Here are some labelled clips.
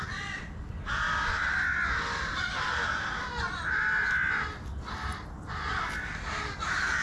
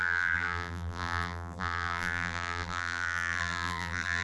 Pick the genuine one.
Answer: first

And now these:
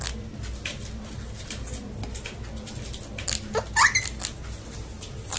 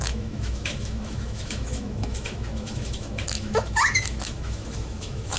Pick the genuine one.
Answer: first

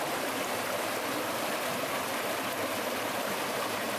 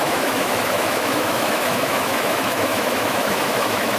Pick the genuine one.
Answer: first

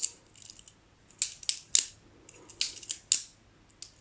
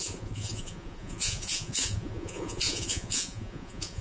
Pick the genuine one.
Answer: first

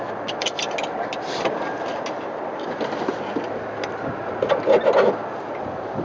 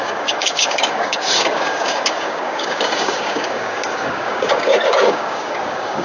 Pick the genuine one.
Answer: first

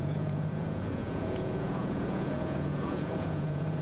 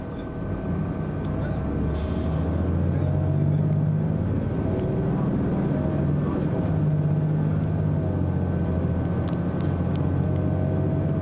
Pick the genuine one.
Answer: second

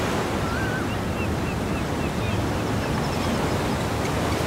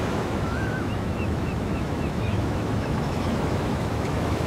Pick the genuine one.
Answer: first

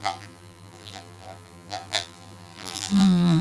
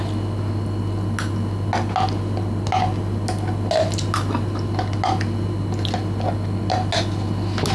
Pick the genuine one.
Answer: second